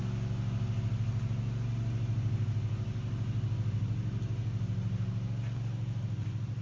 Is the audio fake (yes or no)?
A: no